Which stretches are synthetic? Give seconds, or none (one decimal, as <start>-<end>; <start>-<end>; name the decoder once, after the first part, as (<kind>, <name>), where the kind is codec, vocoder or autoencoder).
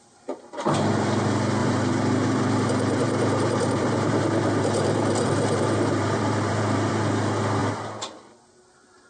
1.6-6.9 (vocoder, BigVGAN v2)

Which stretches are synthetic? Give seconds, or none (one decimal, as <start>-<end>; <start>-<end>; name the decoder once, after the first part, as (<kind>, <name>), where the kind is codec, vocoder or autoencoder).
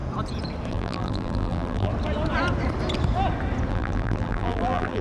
0.7-1.9 (vocoder, BigVGAN v2); 3.7-5.0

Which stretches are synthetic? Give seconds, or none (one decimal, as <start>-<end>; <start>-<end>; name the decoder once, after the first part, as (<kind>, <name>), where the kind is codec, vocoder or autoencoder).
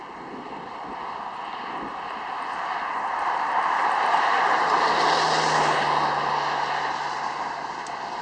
3.1-4.6 (vocoder, BigVGAN v2)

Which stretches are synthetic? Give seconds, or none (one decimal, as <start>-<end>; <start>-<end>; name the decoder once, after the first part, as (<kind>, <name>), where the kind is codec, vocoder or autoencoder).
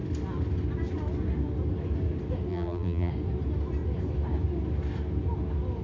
2.5-3.1 (vocoder, BigVGAN v2)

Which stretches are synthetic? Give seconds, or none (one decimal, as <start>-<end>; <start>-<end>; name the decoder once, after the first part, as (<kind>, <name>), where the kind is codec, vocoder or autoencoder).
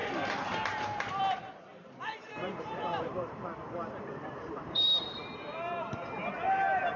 1.7-5.3 (vocoder, BigVGAN v2)